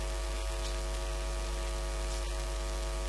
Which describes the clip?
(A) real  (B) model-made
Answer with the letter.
A